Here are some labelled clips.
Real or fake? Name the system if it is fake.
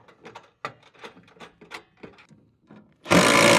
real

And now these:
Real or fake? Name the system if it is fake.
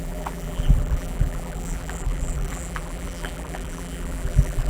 fake, vocoder, BigVGAN v2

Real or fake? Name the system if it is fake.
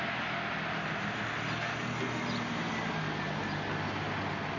real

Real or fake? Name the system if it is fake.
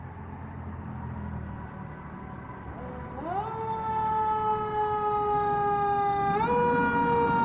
real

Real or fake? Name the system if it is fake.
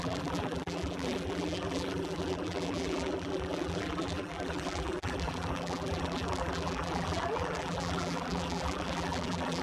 fake, vocoder, BigVGAN v2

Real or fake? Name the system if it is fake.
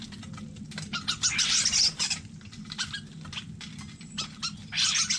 real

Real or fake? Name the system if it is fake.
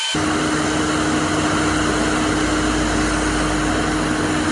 real